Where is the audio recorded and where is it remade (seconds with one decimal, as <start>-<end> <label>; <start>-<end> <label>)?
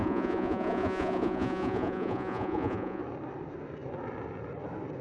0.0-3.0 remade; 3.0-5.0 recorded